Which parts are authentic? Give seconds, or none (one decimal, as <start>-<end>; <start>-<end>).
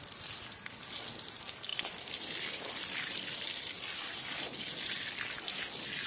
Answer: 0.0-1.7; 4.6-6.1